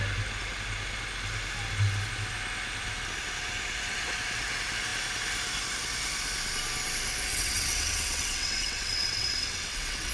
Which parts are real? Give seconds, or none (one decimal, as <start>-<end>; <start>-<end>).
0.0-7.3